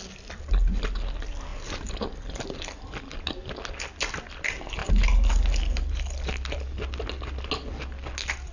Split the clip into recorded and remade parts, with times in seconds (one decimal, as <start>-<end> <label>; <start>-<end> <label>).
0.0-8.5 recorded